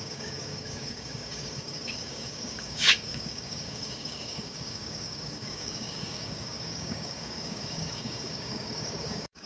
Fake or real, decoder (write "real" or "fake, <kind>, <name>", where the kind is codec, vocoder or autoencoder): fake, codec, DAC